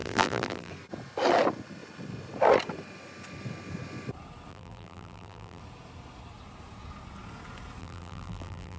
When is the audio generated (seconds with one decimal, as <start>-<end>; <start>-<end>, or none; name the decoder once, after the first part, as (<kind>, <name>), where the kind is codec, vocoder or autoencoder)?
0.0-0.7 (vocoder, BigVGAN v2); 4.5-5.6; 7.8-8.8